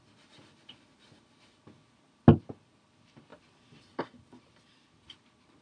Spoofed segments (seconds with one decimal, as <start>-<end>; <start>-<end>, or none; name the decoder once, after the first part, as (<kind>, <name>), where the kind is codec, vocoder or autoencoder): none